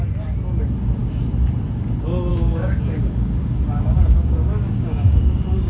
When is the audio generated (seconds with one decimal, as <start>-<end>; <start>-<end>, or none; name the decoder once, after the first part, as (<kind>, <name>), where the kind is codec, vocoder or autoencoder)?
2.3-5.7 (codec, DAC)